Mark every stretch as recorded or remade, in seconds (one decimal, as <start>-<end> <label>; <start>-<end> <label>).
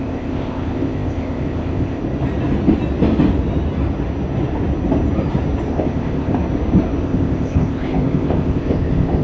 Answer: 0.0-2.0 remade; 2.0-5.7 recorded; 5.7-6.4 remade; 6.4-7.0 recorded; 7.0-9.2 remade